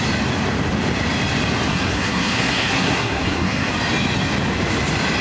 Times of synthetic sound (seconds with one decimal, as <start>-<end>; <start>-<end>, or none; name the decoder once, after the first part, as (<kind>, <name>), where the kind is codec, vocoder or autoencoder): 1.7-3.7 (codec, SNAC)